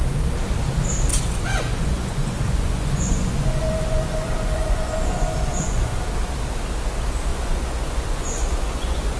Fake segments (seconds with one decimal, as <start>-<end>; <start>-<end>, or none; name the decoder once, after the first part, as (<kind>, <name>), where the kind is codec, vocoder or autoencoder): 1.1-6.0 (vocoder, Vocos); 7.3-9.2